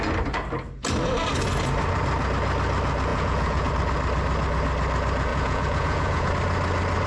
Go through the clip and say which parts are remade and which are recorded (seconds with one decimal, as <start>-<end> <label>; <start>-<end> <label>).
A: 0.0-3.1 recorded; 3.1-3.7 remade; 3.7-5.3 recorded; 5.3-6.3 remade; 6.3-7.1 recorded